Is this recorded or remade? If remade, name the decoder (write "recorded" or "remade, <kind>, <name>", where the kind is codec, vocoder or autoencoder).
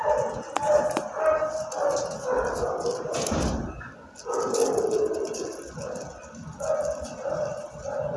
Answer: recorded